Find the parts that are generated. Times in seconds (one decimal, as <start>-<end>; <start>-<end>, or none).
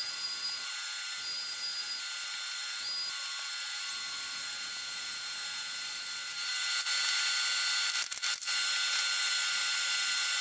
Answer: none